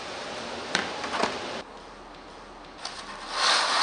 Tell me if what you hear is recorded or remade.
recorded